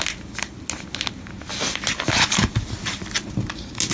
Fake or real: real